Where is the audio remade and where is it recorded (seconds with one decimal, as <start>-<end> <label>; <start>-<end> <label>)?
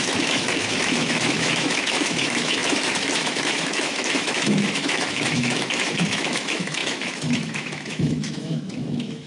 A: 0.0-9.3 remade